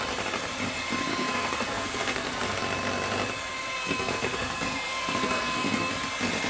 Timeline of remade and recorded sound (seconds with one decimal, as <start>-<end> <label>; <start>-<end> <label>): 0.0-1.1 recorded; 1.1-2.6 remade; 2.6-3.6 recorded; 3.6-5.9 remade; 5.9-6.5 recorded